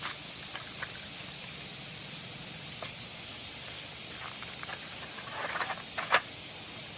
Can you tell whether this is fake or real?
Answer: real